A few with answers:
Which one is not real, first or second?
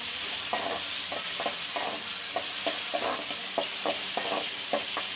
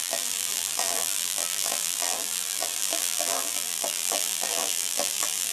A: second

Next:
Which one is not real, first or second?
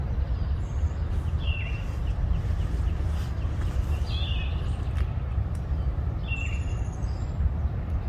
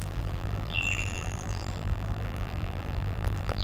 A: second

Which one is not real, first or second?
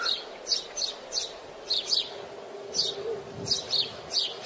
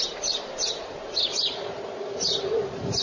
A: second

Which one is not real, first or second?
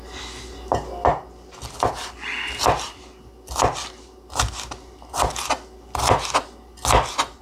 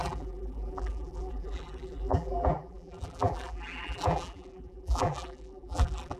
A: second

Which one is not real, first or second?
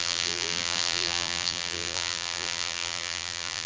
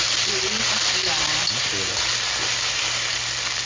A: first